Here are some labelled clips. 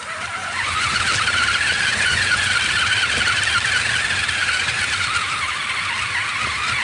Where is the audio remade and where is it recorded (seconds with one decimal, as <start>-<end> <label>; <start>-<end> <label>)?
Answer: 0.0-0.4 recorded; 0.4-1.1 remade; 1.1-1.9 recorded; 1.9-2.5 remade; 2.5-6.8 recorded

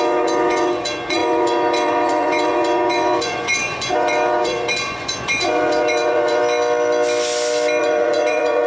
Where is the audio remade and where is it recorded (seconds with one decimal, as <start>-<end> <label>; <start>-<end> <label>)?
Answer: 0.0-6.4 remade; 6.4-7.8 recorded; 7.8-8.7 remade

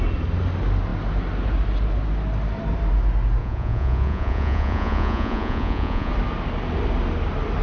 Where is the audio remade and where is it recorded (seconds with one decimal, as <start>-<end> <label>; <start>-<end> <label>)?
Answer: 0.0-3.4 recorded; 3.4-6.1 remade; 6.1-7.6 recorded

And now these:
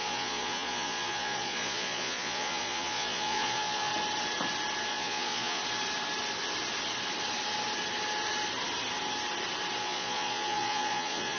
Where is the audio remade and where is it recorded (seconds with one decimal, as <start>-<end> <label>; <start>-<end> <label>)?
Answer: 0.0-3.9 remade; 3.9-4.9 recorded; 4.9-5.6 remade; 5.6-9.8 recorded; 9.8-11.4 remade

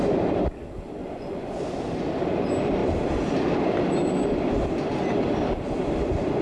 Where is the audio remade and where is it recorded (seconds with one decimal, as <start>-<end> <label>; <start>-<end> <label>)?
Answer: 0.0-1.0 recorded; 1.0-1.6 remade; 1.6-6.4 recorded

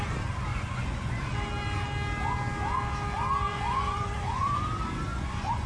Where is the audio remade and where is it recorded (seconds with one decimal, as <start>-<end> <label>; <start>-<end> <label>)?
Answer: 0.0-0.5 recorded; 0.5-1.2 remade; 1.2-3.5 recorded; 3.5-4.6 remade; 4.6-5.1 recorded; 5.1-5.7 remade